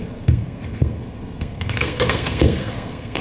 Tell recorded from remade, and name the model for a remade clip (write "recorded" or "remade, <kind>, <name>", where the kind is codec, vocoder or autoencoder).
remade, codec, SNAC